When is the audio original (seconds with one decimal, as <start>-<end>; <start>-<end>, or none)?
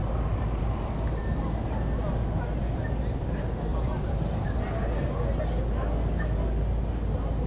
0.0-3.7; 4.4-7.5